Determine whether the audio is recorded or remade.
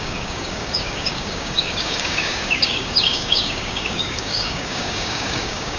remade